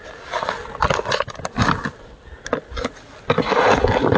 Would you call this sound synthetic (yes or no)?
no